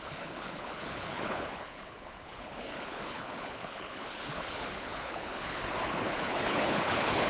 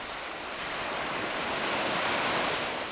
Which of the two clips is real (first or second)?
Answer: second